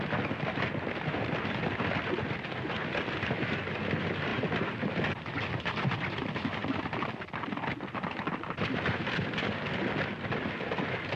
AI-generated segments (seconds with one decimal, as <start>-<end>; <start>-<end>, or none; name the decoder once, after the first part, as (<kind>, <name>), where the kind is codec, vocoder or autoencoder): 6.6-8.3 (vocoder, BigVGAN v2)